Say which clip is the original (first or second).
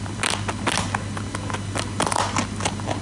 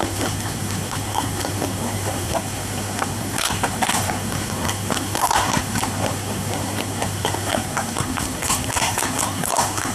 first